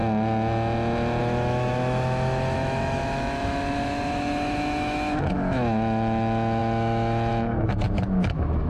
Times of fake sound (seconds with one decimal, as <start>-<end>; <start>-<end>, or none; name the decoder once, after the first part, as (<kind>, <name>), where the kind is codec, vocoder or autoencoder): 1.2-8.7 (autoencoder, DAC-VAE)